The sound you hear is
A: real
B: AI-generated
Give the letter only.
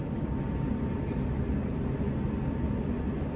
A